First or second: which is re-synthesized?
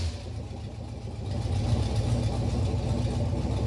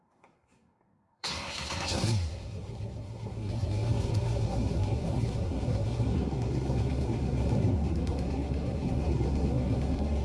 second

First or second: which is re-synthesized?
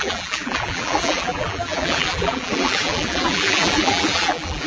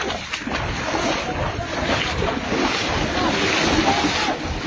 first